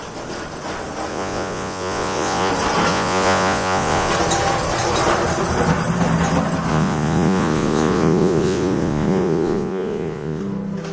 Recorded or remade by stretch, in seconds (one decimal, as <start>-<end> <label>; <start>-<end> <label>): 0.0-1.1 recorded; 1.1-2.5 remade; 2.5-2.9 recorded; 2.9-4.1 remade; 4.1-6.7 recorded; 6.7-10.4 remade; 10.4-10.9 recorded